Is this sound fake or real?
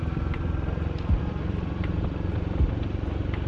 fake